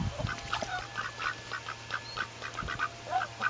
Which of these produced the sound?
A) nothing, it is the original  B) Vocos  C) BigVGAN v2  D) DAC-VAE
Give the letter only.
A